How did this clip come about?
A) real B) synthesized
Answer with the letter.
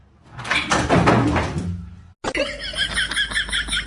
A